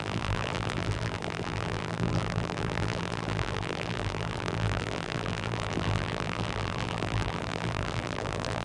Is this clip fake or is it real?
fake